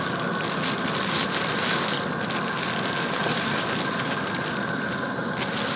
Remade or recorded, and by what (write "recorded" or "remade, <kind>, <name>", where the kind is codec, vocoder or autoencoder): recorded